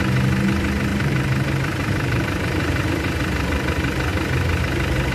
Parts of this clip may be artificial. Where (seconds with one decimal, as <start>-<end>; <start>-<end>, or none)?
0.9-2.9